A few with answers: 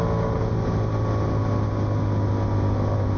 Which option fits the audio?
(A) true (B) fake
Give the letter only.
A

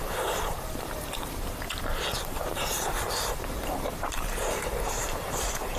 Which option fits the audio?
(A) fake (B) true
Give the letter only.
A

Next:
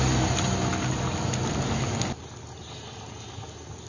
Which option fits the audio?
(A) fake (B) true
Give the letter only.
B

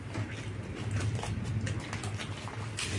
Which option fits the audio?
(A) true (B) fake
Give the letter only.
A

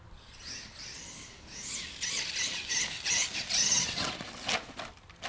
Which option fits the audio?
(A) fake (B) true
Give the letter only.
B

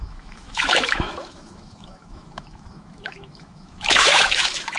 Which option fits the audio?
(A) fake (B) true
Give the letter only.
A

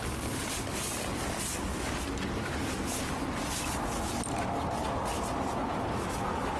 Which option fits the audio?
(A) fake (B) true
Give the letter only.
B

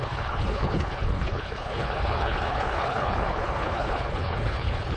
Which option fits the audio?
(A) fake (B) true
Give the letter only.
A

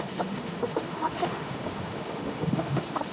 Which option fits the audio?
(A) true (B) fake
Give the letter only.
B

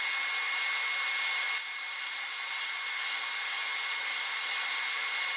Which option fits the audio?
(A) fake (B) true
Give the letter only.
B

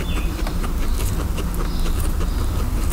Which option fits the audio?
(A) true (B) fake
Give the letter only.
A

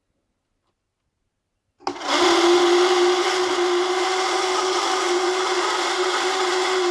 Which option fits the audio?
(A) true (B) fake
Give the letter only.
A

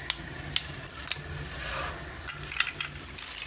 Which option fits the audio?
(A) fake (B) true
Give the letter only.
B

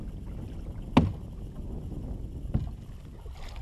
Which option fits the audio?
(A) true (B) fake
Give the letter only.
A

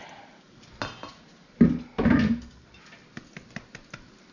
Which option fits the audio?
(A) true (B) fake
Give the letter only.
A